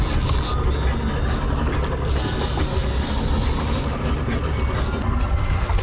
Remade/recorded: recorded